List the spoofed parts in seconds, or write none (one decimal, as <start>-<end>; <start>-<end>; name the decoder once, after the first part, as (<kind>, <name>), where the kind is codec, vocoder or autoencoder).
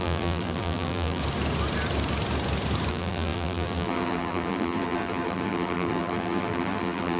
0.0-1.2 (vocoder, BigVGAN v2); 2.9-7.2